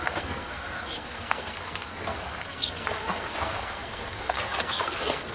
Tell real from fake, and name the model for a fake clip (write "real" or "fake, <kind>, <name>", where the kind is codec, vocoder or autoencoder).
fake, codec, SNAC